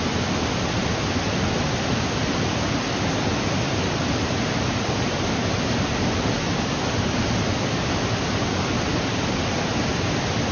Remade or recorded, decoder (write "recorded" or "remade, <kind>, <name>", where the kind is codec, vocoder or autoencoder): recorded